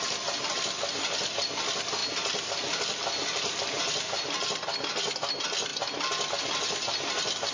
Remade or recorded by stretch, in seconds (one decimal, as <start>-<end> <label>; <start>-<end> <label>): 0.0-2.0 recorded; 2.0-3.8 remade; 3.8-7.5 recorded